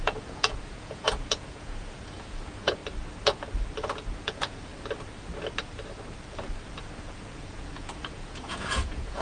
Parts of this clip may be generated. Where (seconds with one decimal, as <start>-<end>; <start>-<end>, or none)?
0.0-2.8; 4.2-4.7; 6.8-9.2